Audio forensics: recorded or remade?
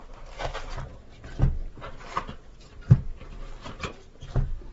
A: recorded